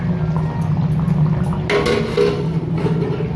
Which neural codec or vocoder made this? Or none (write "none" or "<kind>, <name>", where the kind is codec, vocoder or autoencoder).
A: none